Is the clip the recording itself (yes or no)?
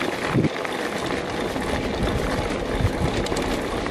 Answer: yes